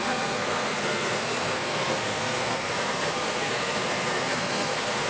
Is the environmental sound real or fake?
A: fake